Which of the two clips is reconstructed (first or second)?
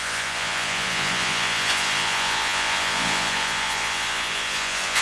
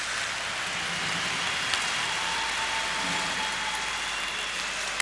first